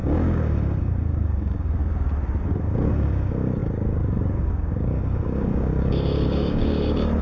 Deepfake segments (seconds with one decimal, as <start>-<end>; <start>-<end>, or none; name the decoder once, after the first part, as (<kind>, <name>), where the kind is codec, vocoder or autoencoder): 0.0-1.8 (codec, DAC); 2.4-7.2